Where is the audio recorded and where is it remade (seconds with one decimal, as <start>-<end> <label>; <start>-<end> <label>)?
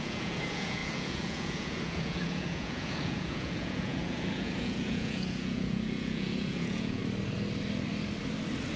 0.0-7.0 remade; 7.0-8.8 recorded